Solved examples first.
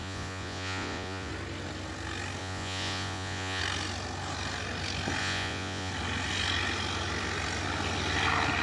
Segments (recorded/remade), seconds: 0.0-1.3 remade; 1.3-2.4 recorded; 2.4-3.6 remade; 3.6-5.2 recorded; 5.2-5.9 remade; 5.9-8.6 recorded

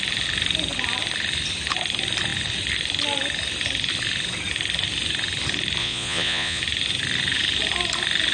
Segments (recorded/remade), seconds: 0.0-5.8 recorded; 5.8-6.6 remade; 6.6-8.3 recorded

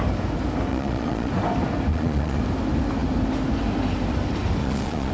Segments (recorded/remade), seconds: 0.0-0.7 recorded; 0.7-1.3 remade; 1.3-1.9 recorded; 1.9-2.4 remade; 2.4-4.6 recorded; 4.6-5.1 remade

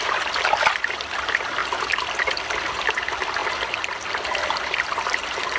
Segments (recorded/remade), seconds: 0.0-5.6 recorded

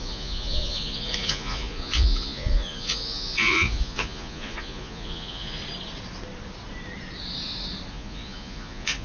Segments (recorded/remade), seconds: 0.0-5.6 remade; 5.6-7.9 recorded; 7.9-9.0 remade

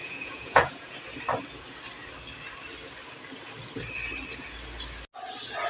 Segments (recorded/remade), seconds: 0.0-0.9 remade; 0.9-5.7 recorded

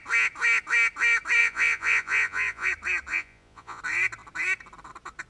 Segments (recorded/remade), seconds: 0.0-1.4 recorded; 1.4-2.7 remade; 2.7-3.1 recorded; 3.1-3.8 remade; 3.8-5.3 recorded